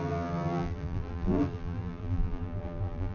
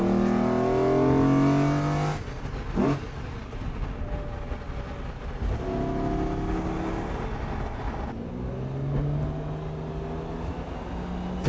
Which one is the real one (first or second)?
second